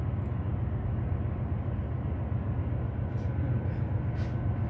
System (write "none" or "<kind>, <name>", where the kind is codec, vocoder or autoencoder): none